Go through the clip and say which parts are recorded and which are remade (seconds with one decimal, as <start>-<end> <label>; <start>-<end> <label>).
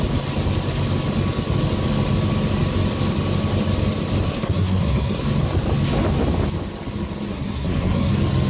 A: 0.0-4.3 recorded; 4.3-5.2 remade; 5.2-7.3 recorded; 7.3-8.1 remade; 8.1-8.5 recorded